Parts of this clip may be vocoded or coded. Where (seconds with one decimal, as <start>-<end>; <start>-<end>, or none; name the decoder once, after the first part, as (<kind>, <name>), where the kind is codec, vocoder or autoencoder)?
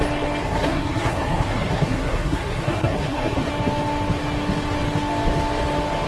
0.4-3.5 (codec, SNAC)